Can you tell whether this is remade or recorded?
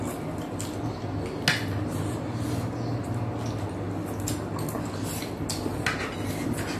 recorded